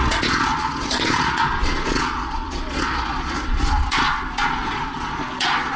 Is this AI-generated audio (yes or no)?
yes